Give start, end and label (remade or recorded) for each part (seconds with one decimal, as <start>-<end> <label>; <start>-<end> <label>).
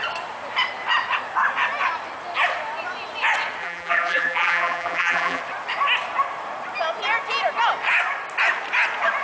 0.0-3.6 recorded; 3.6-5.4 remade; 5.4-9.2 recorded